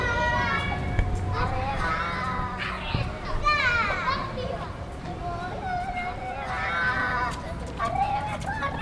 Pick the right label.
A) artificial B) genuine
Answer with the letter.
B